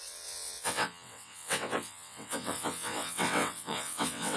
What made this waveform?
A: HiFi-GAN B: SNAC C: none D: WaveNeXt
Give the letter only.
D